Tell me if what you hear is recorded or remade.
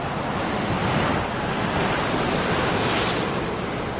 recorded